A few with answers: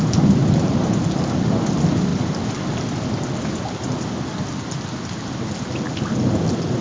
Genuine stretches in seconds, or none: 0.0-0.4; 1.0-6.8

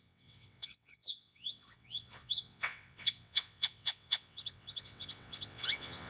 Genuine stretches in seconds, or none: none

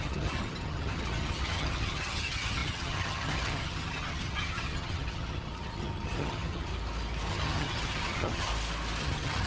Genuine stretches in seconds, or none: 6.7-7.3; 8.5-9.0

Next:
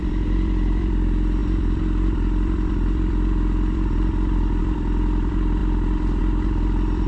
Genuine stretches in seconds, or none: none